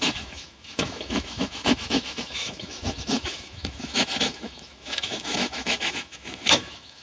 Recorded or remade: remade